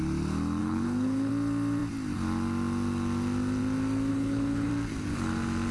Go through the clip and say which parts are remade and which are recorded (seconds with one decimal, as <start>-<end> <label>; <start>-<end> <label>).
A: 0.0-0.6 recorded; 0.6-1.3 remade; 1.3-4.1 recorded; 4.1-4.7 remade; 4.7-5.7 recorded